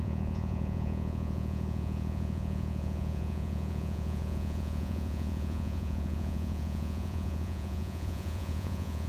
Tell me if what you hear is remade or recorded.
remade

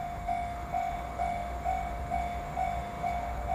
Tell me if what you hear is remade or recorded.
remade